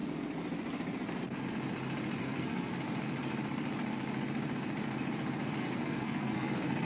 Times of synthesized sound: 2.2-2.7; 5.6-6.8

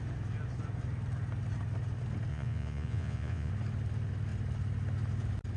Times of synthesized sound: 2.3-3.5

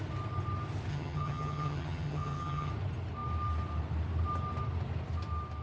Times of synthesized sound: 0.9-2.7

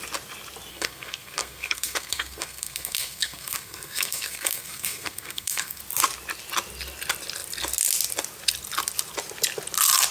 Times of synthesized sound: 0.7-5.8